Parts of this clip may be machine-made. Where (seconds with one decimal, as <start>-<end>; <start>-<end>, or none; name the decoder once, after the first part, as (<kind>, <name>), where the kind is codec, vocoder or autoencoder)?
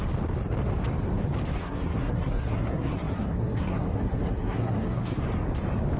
1.6-5.2 (codec, SNAC)